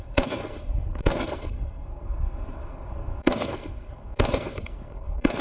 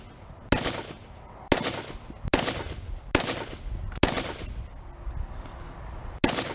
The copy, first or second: first